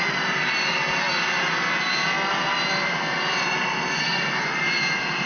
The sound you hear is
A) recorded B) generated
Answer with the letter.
A